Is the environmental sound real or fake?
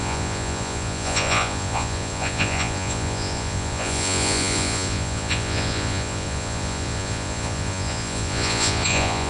fake